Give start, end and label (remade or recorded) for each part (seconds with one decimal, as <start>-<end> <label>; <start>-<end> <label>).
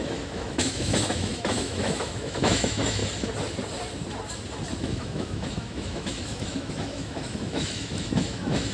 0.0-3.0 remade; 3.0-4.8 recorded; 4.8-8.7 remade